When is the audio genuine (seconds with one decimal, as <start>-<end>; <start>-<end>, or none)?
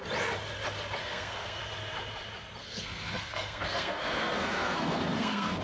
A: 0.0-1.0; 1.6-2.6